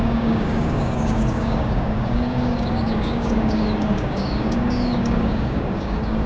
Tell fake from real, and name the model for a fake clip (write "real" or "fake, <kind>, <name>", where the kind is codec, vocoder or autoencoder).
fake, codec, DAC